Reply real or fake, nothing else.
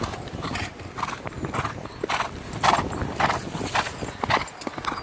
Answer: real